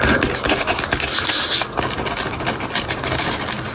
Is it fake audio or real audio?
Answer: real